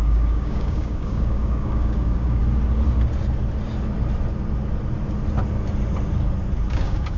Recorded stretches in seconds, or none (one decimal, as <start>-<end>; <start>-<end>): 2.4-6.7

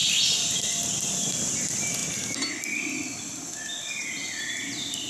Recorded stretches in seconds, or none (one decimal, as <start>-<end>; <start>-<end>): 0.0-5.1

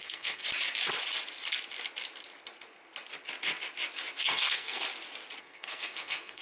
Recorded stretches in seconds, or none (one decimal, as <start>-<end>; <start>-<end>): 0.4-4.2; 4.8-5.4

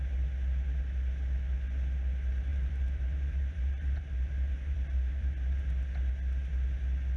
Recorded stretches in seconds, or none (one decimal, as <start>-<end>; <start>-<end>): 0.0-2.5; 5.6-7.2

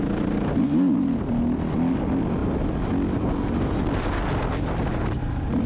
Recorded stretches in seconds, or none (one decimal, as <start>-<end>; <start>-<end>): 0.0-5.7

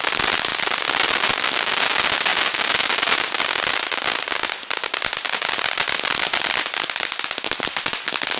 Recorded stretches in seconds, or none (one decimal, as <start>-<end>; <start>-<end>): 0.0-8.4